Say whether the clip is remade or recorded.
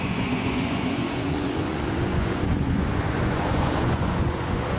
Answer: remade